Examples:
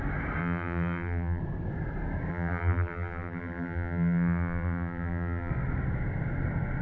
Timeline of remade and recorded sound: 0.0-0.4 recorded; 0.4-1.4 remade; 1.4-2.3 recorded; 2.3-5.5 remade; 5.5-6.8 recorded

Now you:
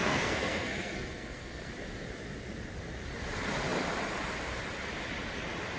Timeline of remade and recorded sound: 0.0-1.7 remade; 1.7-5.8 recorded

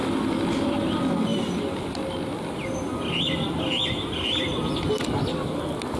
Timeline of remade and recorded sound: 0.0-6.0 recorded

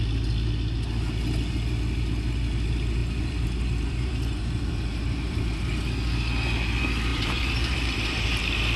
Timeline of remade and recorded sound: 0.0-3.0 recorded; 3.0-5.7 remade; 5.7-7.1 recorded; 7.1-8.4 remade; 8.4-8.8 recorded

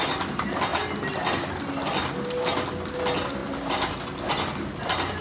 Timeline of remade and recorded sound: 0.0-5.2 recorded

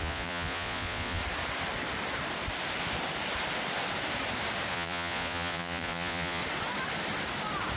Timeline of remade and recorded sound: 0.0-1.2 remade; 1.2-4.7 recorded; 4.7-6.4 remade; 6.4-7.8 recorded